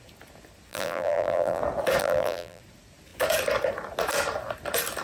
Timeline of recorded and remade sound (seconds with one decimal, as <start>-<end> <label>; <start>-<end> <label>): 0.0-0.7 recorded; 0.7-1.6 remade; 1.6-2.0 recorded; 2.0-2.6 remade; 2.6-5.0 recorded